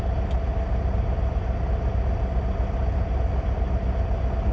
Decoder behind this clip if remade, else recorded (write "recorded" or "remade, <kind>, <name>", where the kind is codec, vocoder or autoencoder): recorded